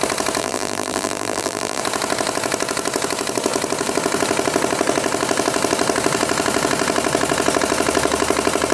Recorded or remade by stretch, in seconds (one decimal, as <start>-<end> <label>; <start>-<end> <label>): 0.0-0.4 recorded; 0.4-1.8 remade; 1.8-8.7 recorded